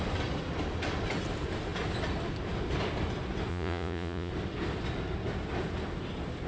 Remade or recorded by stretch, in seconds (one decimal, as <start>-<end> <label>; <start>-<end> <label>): 0.0-3.5 recorded; 3.5-4.3 remade; 4.3-6.5 recorded